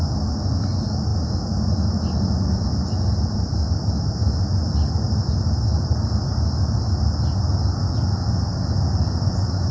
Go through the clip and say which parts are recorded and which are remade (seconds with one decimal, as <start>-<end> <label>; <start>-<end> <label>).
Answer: 0.0-9.7 recorded